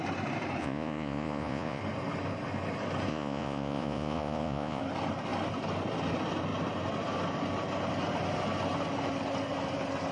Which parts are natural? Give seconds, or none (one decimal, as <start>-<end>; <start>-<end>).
0.0-0.6; 1.8-3.1; 4.8-10.1